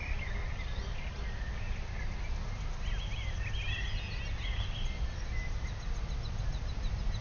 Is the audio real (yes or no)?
yes